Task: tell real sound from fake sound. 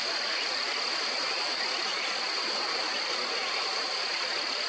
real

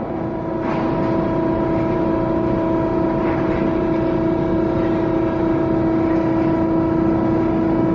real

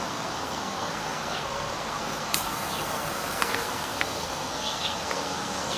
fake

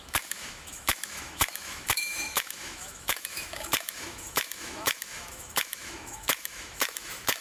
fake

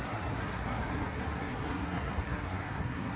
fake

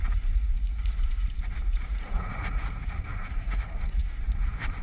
fake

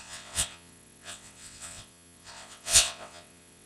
fake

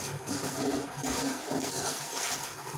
fake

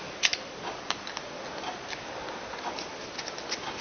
real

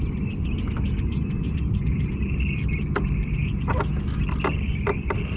real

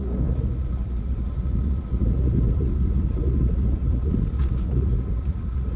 fake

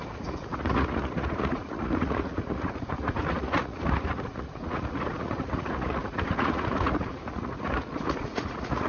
fake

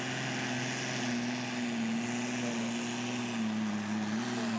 real